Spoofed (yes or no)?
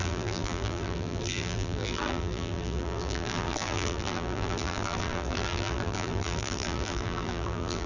yes